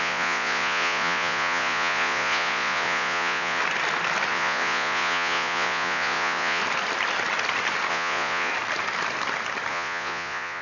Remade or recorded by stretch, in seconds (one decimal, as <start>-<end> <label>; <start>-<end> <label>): 0.0-3.6 remade; 3.6-4.3 recorded; 4.3-6.6 remade; 6.6-7.9 recorded; 7.9-8.5 remade; 8.5-9.7 recorded; 9.7-10.6 remade